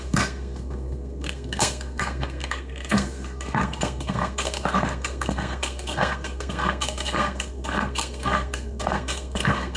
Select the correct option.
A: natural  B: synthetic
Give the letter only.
B